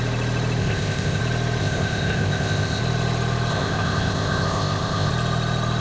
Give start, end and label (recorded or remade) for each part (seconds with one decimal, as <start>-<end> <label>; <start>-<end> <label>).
0.0-0.6 recorded; 0.6-1.2 remade; 1.2-1.6 recorded; 1.6-2.8 remade; 2.8-3.5 recorded; 3.5-5.1 remade; 5.1-5.8 recorded